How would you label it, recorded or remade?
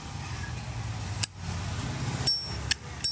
recorded